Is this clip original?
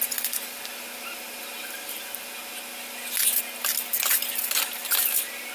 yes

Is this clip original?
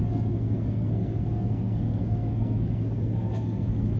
no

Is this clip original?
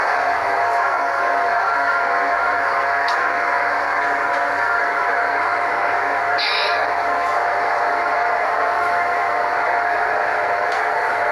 no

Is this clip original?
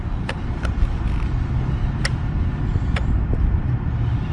yes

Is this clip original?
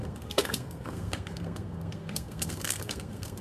no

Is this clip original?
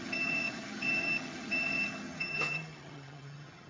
no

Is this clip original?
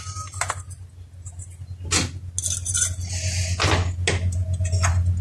yes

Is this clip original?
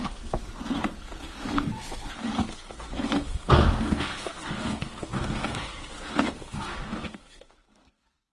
no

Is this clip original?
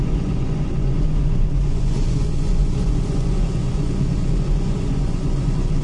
no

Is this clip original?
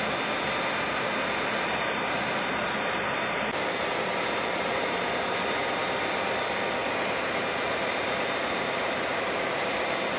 yes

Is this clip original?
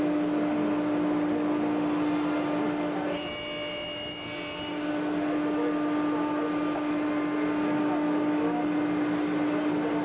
yes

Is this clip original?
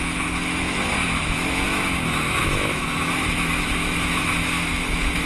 no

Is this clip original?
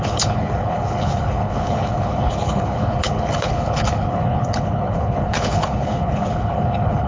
no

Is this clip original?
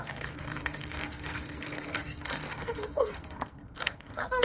no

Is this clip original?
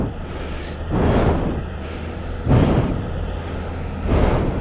yes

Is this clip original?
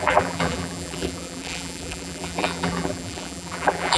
no